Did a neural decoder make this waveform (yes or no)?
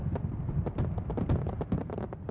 no